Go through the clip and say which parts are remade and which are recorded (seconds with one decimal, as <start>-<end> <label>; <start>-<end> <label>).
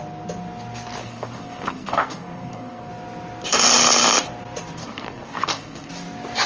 0.0-1.0 recorded; 1.0-2.9 remade; 2.9-4.8 recorded; 4.8-5.9 remade; 5.9-6.5 recorded